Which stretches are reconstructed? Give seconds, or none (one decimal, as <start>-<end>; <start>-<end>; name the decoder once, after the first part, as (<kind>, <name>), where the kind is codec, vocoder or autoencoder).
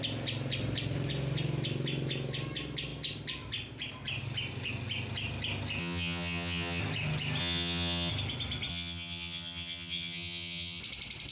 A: 5.8-6.8 (vocoder, HiFi-GAN); 7.4-8.1; 8.7-10.8